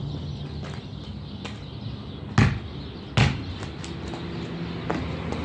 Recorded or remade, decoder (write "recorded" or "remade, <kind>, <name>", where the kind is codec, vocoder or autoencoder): recorded